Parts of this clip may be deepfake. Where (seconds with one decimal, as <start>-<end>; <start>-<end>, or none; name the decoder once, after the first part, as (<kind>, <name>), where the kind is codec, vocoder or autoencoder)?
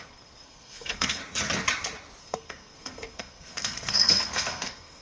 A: 0.0-1.2 (codec, SNAC); 2.2-5.0